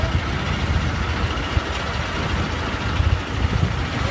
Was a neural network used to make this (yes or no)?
no